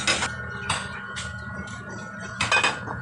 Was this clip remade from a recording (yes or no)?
no